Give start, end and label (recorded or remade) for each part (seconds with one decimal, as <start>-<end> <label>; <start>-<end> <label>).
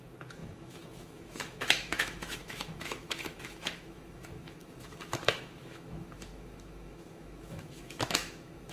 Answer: 0.0-8.7 remade